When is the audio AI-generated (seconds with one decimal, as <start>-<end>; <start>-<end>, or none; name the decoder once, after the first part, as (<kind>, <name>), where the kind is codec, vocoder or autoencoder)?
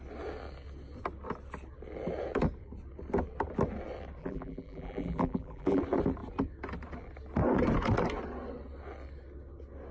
4.2-5.8 (vocoder, BigVGAN v2)